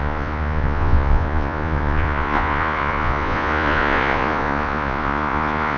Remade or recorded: remade